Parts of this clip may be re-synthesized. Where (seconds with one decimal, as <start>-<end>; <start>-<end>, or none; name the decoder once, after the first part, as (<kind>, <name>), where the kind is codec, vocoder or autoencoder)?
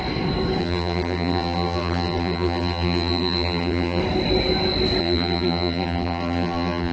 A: 0.6-4.0 (vocoder, BigVGAN v2); 5.0-6.9